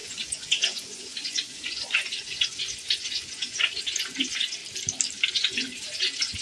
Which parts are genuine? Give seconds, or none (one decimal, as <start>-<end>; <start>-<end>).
4.6-5.3

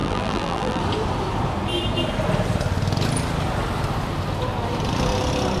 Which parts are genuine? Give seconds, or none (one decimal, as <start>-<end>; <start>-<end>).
0.8-5.6

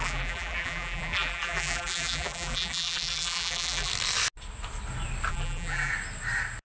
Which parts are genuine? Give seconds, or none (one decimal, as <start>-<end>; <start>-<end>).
3.9-5.3; 5.9-6.6